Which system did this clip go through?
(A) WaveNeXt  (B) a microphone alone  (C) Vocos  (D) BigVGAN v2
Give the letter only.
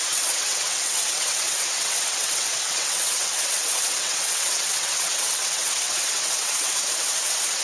A